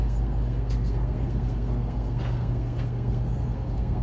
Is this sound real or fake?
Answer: fake